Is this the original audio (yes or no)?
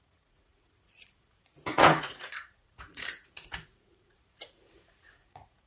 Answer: no